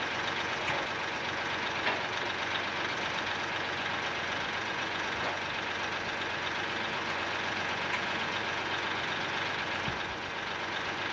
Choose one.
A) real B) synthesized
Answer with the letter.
B